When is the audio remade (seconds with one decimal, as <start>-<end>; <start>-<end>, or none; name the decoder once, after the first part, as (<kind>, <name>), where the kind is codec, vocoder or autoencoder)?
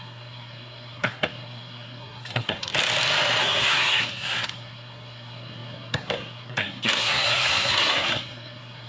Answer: 0.0-2.7 (codec, SNAC); 3.4-8.9